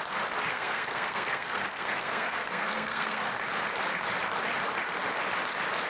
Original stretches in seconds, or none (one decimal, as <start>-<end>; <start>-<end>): 0.0-0.5; 3.3-5.9